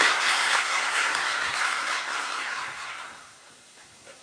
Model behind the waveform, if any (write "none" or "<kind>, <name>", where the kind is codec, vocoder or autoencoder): codec, SNAC